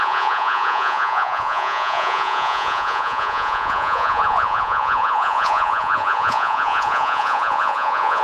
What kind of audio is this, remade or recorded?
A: remade